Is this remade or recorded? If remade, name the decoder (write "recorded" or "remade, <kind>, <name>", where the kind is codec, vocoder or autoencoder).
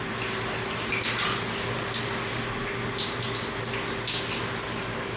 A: recorded